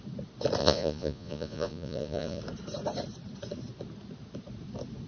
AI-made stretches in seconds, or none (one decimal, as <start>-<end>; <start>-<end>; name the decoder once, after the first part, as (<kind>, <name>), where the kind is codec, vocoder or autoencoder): 0.6-2.4 (vocoder, Vocos)